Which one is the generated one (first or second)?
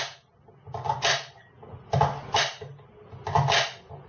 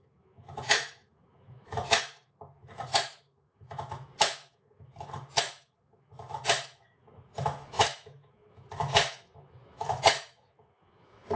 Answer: second